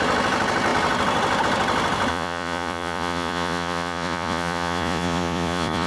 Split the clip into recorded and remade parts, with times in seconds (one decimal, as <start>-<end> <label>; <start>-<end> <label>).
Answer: 0.0-2.1 recorded; 2.1-5.9 remade